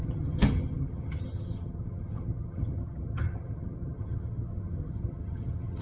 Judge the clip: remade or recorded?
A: remade